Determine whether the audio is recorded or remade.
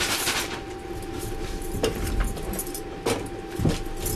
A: recorded